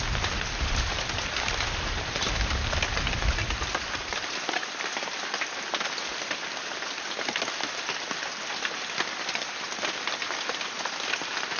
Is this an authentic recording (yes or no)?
yes